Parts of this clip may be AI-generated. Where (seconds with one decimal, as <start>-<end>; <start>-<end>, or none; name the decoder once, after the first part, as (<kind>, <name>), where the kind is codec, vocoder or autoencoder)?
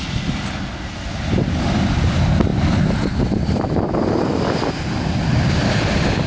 none